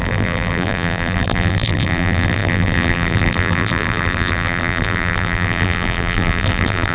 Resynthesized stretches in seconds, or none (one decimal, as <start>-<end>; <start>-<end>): 0.0-6.9